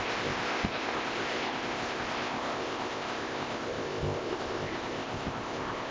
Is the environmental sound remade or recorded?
remade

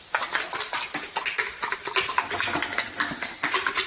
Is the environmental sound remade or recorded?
recorded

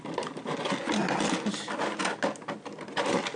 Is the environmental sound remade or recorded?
recorded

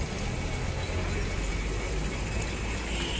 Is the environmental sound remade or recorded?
recorded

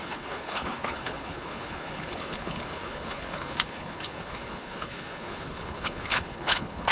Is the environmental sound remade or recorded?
remade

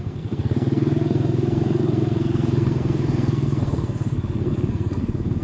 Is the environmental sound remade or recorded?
remade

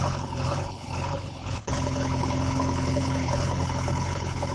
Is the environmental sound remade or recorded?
remade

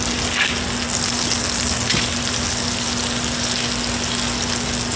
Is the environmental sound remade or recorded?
recorded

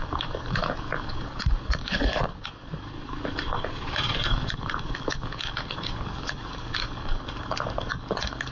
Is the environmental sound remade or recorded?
remade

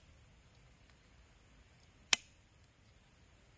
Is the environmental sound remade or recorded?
recorded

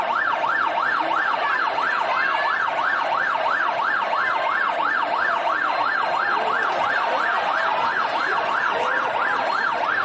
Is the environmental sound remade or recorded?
recorded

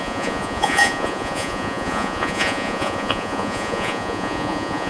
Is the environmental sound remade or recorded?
remade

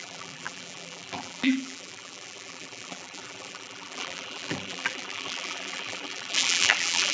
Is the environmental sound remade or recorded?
remade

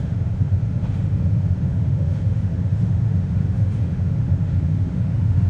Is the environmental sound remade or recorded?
remade